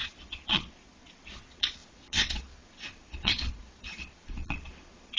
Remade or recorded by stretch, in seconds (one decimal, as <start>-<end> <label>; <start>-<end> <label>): 0.0-5.2 remade